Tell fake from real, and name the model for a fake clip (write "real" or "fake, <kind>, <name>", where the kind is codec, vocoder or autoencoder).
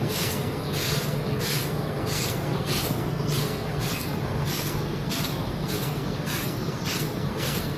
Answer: fake, codec, SNAC